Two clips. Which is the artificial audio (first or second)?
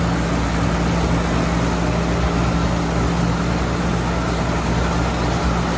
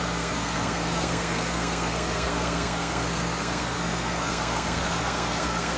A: second